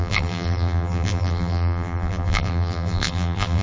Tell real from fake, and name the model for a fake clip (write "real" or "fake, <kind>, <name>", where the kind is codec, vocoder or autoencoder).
fake, vocoder, BigVGAN v2